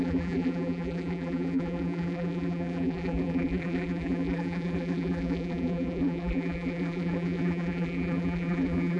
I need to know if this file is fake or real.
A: fake